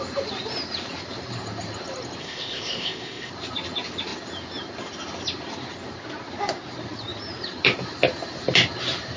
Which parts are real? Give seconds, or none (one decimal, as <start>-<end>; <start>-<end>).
0.0-2.2; 3.3-9.2